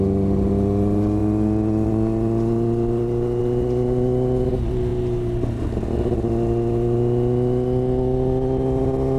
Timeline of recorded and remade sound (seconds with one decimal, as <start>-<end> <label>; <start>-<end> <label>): 0.0-9.2 recorded